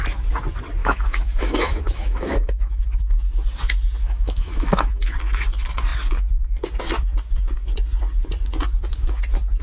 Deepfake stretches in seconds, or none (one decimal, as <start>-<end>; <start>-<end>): 0.8-2.8; 4.0-4.9